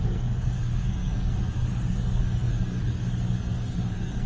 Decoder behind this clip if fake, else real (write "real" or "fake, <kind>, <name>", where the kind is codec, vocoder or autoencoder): fake, codec, SNAC